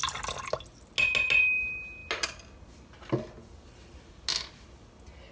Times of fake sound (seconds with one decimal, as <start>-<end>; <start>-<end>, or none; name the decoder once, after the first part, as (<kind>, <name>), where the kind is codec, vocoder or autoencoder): none